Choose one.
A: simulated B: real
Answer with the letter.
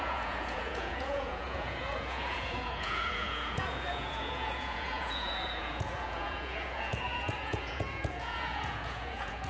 A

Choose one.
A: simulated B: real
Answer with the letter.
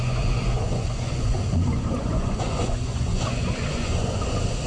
A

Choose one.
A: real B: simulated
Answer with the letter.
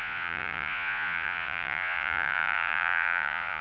B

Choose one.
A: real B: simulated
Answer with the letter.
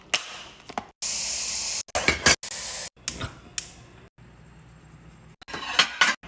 A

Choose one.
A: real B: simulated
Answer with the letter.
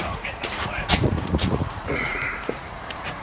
B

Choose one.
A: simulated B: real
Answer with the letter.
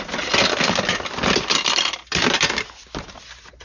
B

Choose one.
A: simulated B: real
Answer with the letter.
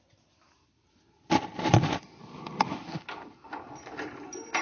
B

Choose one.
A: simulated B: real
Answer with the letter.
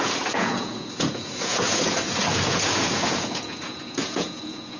A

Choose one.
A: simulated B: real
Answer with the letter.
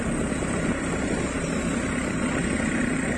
B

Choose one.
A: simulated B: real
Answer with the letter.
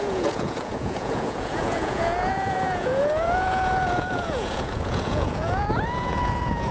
A